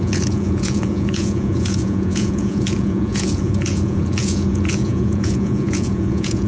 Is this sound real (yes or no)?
no